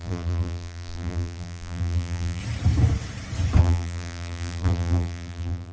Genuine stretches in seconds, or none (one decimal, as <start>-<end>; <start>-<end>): 2.4-3.6